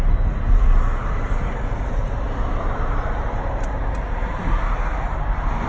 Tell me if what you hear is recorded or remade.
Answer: recorded